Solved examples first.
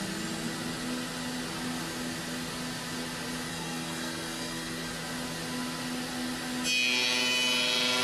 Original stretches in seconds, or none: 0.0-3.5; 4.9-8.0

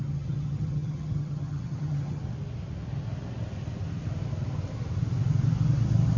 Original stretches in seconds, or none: 2.2-6.2